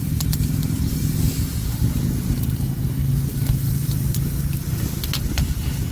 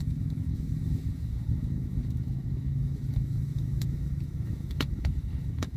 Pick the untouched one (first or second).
first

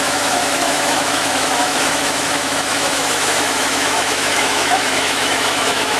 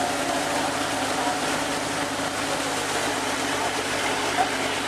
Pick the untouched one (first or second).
second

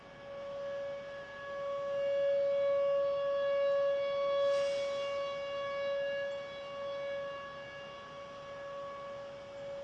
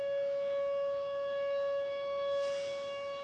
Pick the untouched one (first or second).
first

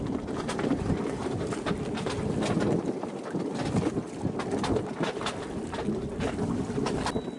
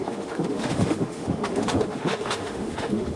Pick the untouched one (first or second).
first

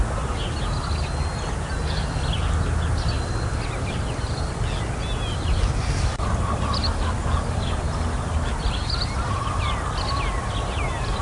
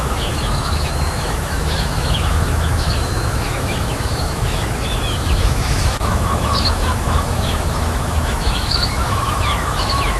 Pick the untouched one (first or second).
first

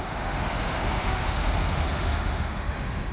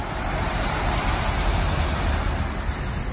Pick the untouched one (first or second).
second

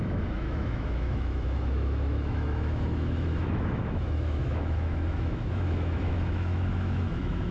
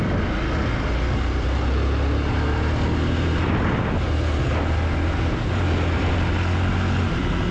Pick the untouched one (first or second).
second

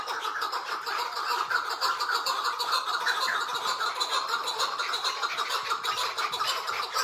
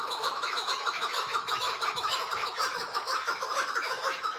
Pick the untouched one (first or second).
first